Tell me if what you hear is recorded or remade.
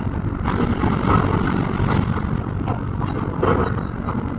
recorded